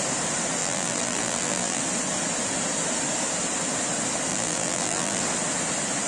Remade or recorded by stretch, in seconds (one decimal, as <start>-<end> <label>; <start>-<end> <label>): 0.0-0.6 recorded; 0.6-1.8 remade; 1.8-4.3 recorded; 4.3-5.2 remade; 5.2-6.1 recorded